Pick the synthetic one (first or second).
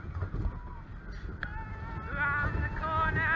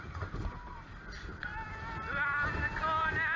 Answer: second